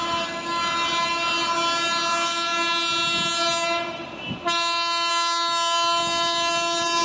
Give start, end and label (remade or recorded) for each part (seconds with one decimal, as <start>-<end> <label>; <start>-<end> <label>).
0.0-7.0 recorded